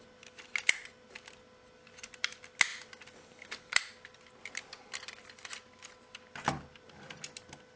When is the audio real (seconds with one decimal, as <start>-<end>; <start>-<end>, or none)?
0.0-7.8

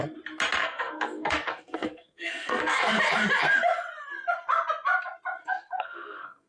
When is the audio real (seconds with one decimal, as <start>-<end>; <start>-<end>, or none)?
0.0-0.6; 2.9-5.4